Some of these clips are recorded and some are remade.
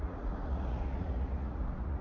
remade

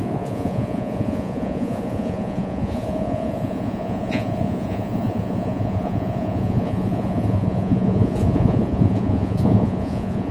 remade